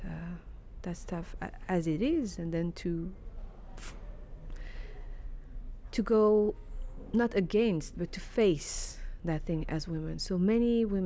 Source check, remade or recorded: recorded